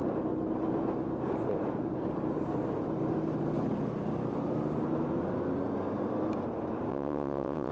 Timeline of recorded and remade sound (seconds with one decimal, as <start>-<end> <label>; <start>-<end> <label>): 0.0-6.9 recorded; 6.9-7.7 remade